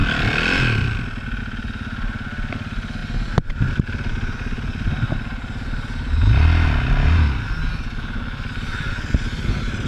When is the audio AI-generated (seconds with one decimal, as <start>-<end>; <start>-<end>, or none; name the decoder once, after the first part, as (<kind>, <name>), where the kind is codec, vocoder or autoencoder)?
none